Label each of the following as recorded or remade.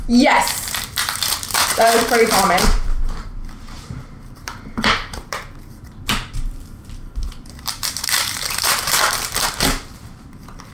remade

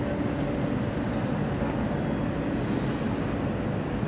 recorded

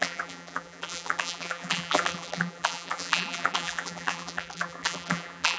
remade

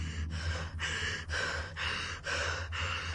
recorded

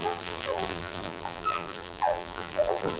remade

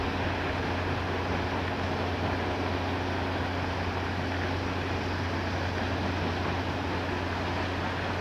recorded